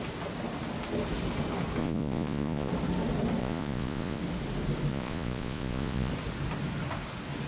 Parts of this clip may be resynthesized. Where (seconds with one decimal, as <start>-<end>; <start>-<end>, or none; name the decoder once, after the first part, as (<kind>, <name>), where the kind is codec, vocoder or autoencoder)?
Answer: 1.8-2.7 (vocoder, Vocos); 3.4-4.2; 4.9-6.1